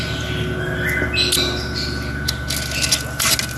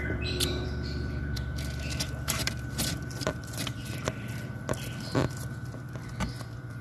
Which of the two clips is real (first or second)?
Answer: first